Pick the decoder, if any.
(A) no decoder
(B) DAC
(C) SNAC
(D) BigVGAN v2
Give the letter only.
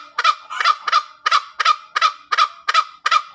A